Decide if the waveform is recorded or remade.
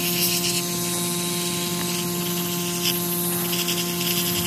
recorded